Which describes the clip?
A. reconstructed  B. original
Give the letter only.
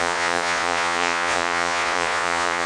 A